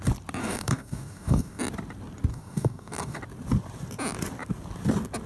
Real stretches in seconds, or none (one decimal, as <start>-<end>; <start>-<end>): 0.0-0.4; 1.6-2.3; 3.2-5.3